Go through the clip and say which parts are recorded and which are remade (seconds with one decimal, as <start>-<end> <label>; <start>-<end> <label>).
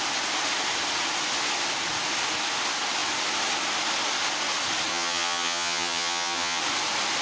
0.0-4.9 recorded; 4.9-6.6 remade; 6.6-7.2 recorded